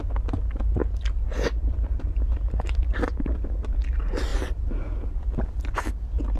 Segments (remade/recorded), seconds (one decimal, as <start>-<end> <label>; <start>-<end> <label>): 0.0-4.3 recorded; 4.3-5.7 remade; 5.7-6.4 recorded